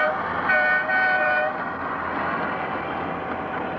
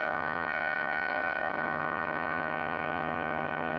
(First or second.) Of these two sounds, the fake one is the second